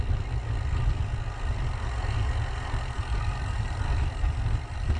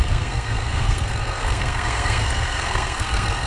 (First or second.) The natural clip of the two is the first